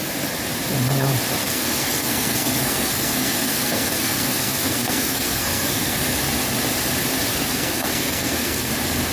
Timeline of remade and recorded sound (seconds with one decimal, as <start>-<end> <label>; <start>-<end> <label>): 0.0-1.4 recorded; 1.4-6.2 remade; 6.2-7.3 recorded; 7.3-8.7 remade; 8.7-9.1 recorded